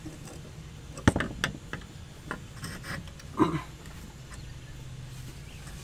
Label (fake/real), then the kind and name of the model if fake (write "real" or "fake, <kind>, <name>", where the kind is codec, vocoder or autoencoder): real